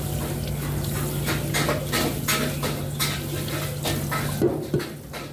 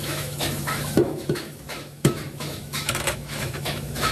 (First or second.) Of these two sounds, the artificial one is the second